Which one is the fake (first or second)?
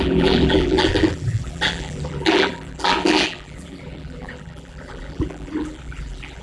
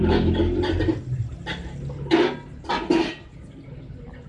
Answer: first